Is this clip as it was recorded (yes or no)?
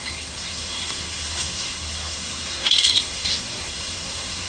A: no